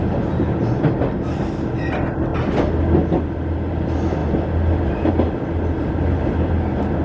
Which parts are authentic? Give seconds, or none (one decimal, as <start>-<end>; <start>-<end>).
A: 0.0-7.0